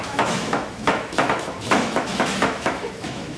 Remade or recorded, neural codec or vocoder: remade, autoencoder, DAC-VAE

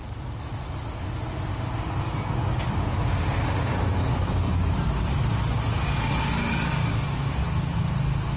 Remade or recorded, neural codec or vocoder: recorded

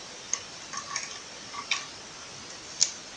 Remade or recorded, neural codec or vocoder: recorded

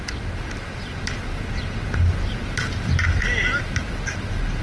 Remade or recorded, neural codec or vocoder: recorded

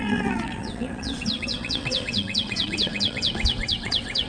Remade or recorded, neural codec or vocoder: remade, vocoder, WaveNeXt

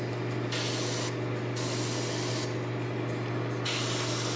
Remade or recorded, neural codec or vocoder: recorded